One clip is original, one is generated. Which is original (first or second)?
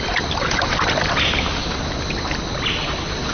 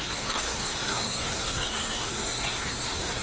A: first